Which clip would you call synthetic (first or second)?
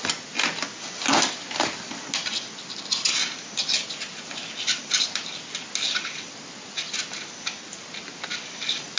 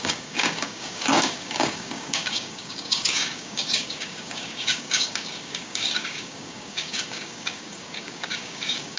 second